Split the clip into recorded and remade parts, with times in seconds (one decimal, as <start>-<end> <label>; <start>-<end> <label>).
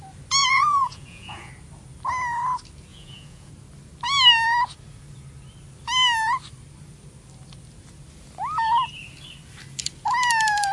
0.0-0.4 recorded; 0.4-1.5 remade; 1.5-2.9 recorded; 2.9-3.5 remade; 3.5-10.7 recorded